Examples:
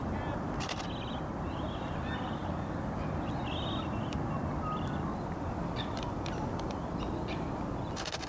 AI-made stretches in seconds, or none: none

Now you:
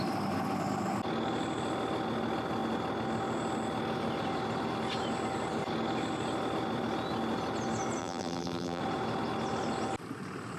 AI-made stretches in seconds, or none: 8.0-8.8 (vocoder, BigVGAN v2)

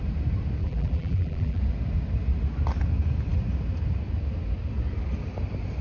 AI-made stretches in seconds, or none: 0.6-1.6 (vocoder, BigVGAN v2)

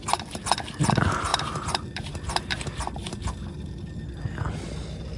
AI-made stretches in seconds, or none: 1.3-3.8 (vocoder, BigVGAN v2)